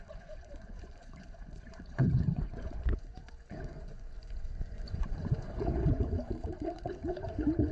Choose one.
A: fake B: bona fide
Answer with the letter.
A